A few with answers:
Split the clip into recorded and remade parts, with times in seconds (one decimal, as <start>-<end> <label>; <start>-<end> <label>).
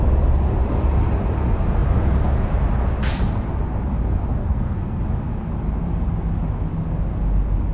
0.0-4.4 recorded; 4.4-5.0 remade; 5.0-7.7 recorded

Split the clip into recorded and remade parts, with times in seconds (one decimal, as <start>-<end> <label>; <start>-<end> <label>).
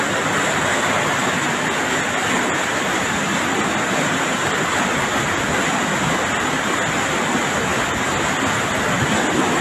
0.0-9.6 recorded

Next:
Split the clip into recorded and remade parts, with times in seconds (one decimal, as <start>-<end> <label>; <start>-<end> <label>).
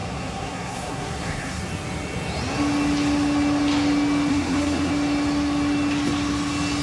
0.0-1.6 remade; 1.6-4.3 recorded; 4.3-4.9 remade; 4.9-6.8 recorded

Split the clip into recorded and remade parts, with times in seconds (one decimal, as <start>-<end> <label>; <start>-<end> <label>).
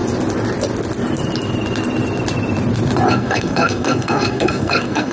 0.0-3.1 recorded; 3.1-5.1 remade